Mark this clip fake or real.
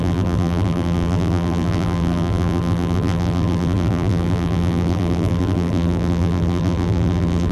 fake